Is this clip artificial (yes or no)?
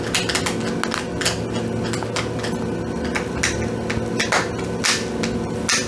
no